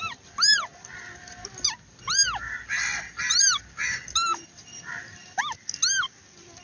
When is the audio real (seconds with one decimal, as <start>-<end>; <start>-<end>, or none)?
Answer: 0.0-6.6